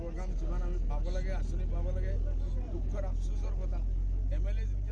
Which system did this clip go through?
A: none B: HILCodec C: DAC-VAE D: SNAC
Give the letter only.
A